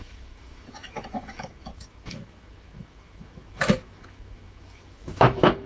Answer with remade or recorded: remade